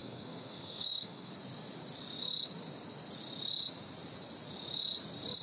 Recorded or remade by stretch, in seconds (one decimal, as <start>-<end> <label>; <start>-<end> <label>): 0.0-1.3 remade; 1.3-5.4 recorded

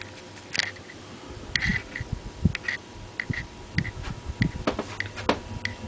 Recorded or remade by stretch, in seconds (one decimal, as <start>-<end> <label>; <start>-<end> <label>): 0.0-5.9 recorded

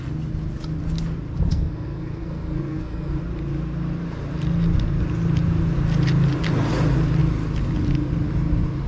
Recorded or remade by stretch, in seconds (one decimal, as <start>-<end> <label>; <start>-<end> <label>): 0.0-1.5 recorded; 1.5-3.2 remade; 3.2-8.9 recorded

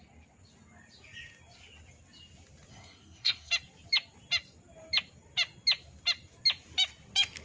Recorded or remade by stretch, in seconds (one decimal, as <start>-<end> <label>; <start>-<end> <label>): 0.0-2.7 recorded; 2.7-3.5 remade; 3.5-7.4 recorded

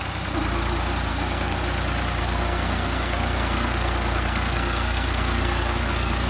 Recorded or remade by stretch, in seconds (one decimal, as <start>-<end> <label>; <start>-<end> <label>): 0.0-1.1 recorded; 1.1-1.6 remade; 1.6-2.2 recorded; 2.2-6.3 remade